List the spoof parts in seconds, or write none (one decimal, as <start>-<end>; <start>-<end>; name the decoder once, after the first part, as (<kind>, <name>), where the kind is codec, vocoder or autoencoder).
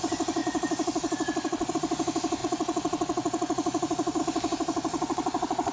0.4-1.7 (vocoder, Vocos); 2.4-4.2; 4.9-5.7